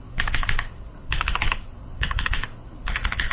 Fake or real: fake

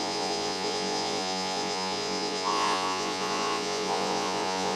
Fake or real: fake